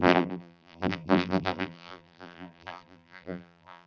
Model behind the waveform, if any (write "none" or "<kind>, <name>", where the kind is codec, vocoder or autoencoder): vocoder, BigVGAN v2